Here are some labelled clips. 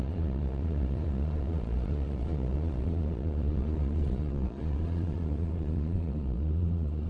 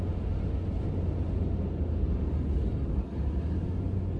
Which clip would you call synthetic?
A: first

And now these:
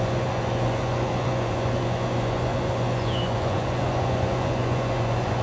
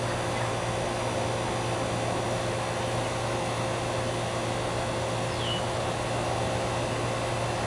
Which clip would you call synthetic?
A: first